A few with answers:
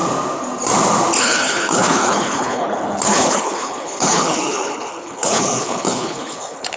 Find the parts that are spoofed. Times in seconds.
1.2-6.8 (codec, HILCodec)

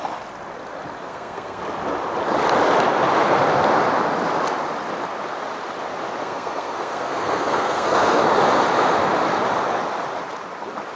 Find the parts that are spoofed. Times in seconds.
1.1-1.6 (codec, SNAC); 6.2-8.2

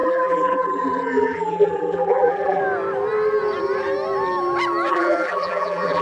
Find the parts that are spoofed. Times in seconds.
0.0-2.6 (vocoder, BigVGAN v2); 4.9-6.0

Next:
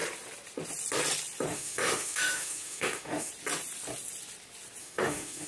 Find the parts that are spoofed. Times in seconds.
1.5-3.3 (autoencoder, DAC-VAE); 4.8-5.5

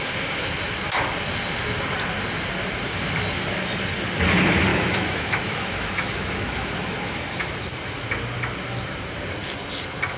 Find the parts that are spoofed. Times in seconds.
4.7-7.6 (autoencoder, DAC-VAE)

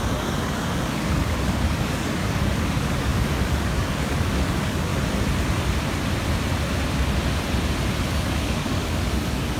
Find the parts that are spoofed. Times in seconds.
0.0-4.9 (codec, DAC); 8.1-9.6